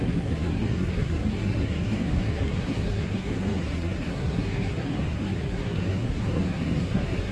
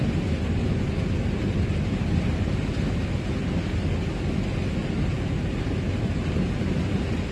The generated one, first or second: first